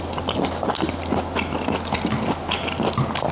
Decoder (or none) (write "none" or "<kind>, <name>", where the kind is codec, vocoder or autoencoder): none